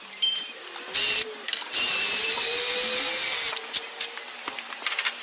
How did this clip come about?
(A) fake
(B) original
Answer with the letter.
B